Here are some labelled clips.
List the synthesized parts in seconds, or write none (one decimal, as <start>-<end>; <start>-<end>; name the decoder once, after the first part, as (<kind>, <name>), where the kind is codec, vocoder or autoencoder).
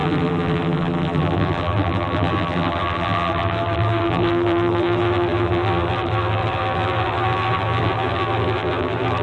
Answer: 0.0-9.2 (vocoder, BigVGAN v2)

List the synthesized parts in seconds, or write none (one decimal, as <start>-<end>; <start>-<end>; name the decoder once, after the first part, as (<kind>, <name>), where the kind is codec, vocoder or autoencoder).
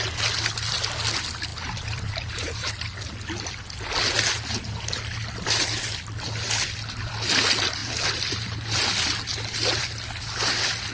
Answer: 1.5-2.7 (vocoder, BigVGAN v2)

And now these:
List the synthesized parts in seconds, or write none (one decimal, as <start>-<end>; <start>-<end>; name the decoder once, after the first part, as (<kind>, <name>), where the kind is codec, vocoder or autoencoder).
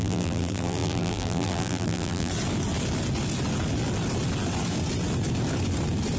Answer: 0.0-2.3 (vocoder, BigVGAN v2)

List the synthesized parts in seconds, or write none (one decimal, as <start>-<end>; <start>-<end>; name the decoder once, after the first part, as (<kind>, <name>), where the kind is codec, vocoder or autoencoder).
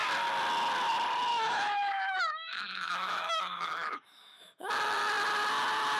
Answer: 1.3-4.7 (autoencoder, DAC-VAE)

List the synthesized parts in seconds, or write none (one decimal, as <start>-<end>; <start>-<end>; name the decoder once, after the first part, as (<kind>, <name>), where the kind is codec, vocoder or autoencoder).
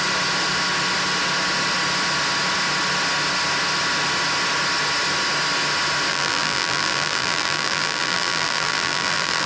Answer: 6.1-9.5 (vocoder, BigVGAN v2)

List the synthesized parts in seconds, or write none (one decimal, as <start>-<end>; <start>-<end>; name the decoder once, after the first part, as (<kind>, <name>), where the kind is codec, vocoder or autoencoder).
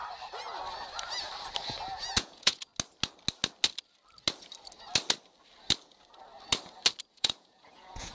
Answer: 2.0-2.7 (vocoder, Vocos); 7.1-8.1